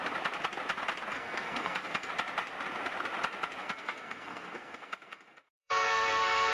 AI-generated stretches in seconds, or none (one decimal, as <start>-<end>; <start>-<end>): 1.1-2.1; 3.6-6.5

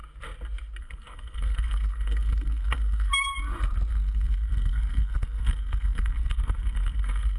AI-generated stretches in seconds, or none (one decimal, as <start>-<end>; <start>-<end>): 0.8-3.1; 3.9-7.4

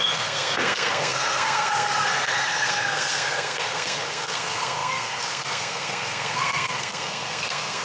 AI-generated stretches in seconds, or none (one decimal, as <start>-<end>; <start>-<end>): 0.0-7.8

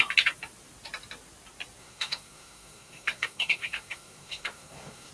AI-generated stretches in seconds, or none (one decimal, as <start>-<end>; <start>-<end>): 1.8-5.1

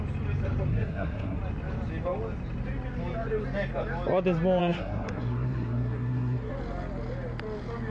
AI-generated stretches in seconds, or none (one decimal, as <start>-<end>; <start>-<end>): 0.7-1.4; 4.6-6.5

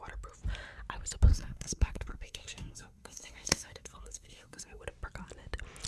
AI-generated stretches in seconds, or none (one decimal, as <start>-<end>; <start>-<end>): 1.3-4.8

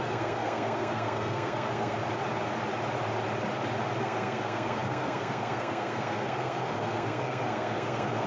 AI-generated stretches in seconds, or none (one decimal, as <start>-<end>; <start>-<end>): 0.0-2.0; 4.0-8.3

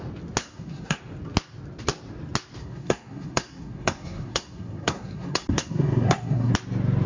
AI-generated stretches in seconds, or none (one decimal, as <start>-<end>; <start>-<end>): 0.4-1.0; 2.6-6.5